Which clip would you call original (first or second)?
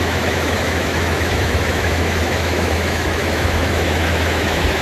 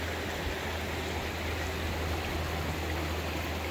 second